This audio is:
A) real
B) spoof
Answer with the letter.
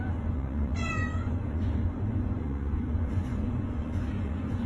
B